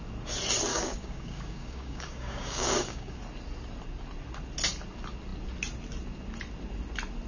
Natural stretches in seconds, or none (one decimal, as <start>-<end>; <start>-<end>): 0.0-0.7; 3.2-7.3

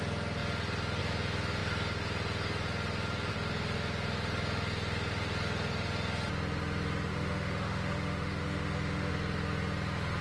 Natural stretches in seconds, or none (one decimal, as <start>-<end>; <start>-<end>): 0.0-7.1; 9.1-10.2

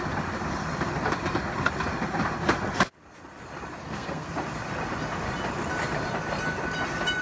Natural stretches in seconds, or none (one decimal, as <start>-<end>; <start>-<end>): 0.0-3.8; 4.3-7.2

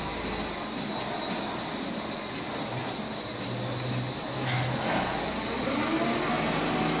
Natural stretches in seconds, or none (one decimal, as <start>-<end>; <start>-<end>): 0.0-7.0

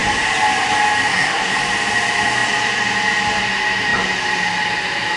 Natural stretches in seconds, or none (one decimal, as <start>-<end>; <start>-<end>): 0.0-1.1; 1.6-5.2

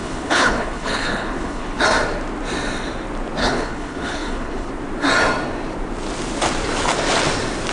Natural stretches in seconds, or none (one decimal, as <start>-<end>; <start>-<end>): 1.8-3.4; 4.7-7.7

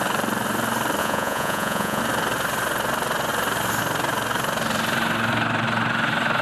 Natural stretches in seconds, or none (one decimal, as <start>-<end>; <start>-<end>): 0.0-1.0; 2.0-6.4